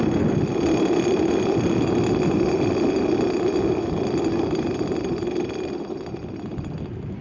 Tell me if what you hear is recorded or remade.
recorded